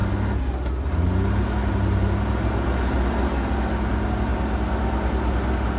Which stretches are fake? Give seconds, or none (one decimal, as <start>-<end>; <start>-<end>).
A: none